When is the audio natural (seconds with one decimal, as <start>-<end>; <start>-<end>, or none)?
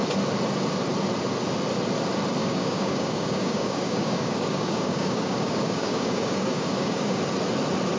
0.0-2.4; 7.2-8.0